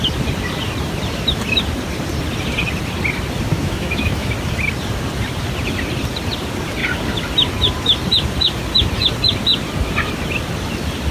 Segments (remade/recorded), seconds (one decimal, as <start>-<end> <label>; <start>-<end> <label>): 0.0-3.5 recorded; 3.5-4.3 remade; 4.3-11.1 recorded